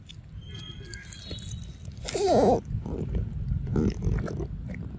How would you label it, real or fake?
real